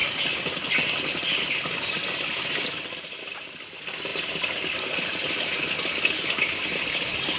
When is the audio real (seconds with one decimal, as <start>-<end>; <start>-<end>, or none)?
0.0-7.4